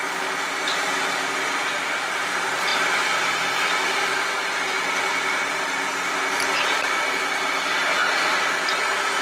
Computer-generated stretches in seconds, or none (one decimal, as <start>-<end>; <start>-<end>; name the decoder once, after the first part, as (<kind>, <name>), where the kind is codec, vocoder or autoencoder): none